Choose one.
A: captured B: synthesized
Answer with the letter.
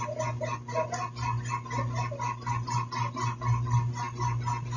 A